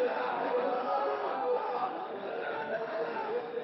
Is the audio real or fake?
fake